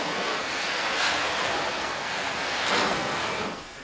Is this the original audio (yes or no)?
no